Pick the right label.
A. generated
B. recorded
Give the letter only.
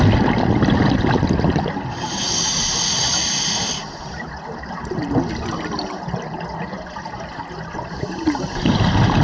B